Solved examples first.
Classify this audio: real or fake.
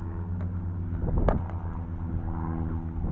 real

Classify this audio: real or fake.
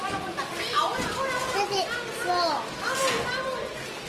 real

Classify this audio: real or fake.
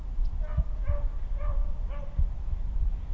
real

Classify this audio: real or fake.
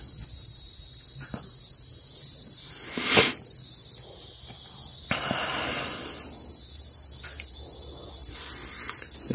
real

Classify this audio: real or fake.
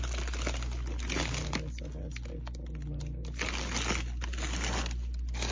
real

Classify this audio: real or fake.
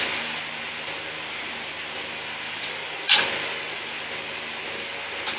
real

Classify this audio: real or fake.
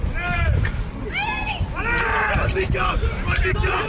real